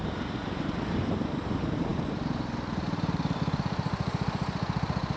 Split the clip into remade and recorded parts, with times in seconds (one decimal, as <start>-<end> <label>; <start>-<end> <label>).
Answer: 0.0-5.2 remade